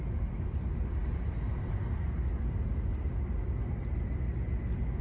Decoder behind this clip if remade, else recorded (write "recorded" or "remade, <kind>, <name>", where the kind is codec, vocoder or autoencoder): recorded